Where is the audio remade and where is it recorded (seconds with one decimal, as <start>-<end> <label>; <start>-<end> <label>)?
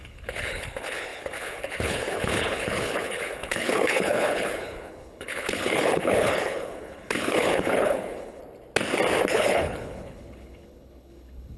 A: 0.0-8.4 remade; 8.4-9.3 recorded; 9.3-11.6 remade